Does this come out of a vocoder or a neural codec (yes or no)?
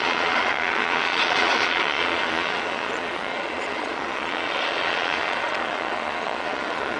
yes